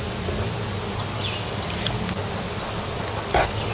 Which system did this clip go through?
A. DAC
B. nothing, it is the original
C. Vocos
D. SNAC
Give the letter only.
B